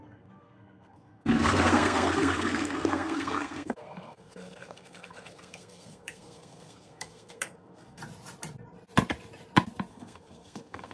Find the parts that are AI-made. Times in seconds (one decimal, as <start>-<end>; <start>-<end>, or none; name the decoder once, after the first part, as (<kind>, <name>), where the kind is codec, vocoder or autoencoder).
0.0-8.0 (codec, SNAC); 9.9-10.9